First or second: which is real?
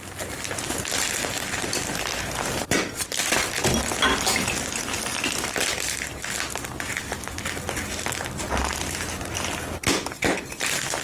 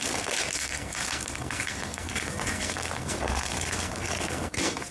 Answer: first